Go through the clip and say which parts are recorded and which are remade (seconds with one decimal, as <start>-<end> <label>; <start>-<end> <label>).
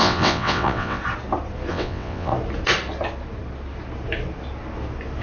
0.0-1.0 remade; 1.0-1.7 recorded; 1.7-2.3 remade; 2.3-5.2 recorded